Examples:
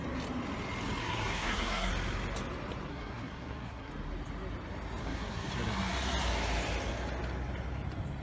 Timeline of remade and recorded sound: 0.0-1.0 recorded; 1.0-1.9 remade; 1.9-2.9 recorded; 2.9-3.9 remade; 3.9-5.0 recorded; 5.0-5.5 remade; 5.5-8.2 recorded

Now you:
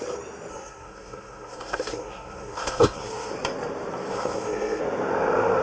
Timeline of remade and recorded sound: 0.0-0.5 recorded; 0.5-3.3 remade; 3.3-4.1 recorded; 4.1-4.8 remade; 4.8-5.6 recorded

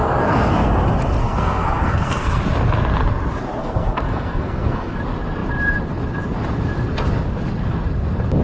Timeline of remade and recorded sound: 0.0-0.7 remade; 0.7-1.2 recorded; 1.2-2.4 remade; 2.4-3.6 recorded; 3.6-5.0 remade; 5.0-8.4 recorded

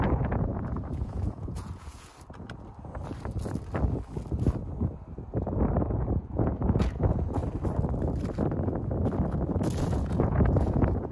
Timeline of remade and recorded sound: 0.0-2.1 remade; 2.1-5.8 recorded; 5.8-7.4 remade; 7.4-9.8 recorded; 9.8-11.1 remade

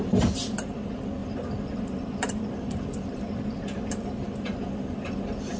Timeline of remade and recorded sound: 0.0-5.6 recorded

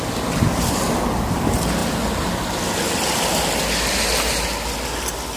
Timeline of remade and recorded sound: 0.0-5.4 recorded

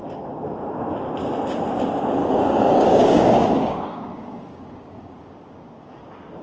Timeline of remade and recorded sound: 0.0-2.2 recorded; 2.2-6.0 remade; 6.0-6.4 recorded

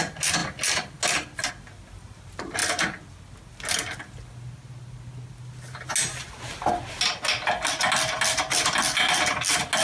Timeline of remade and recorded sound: 0.0-9.8 recorded